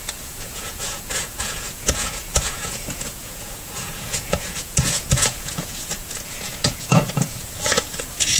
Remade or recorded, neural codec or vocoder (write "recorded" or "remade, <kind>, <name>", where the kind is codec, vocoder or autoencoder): remade, vocoder, Vocos